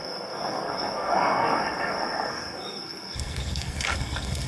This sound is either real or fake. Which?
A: fake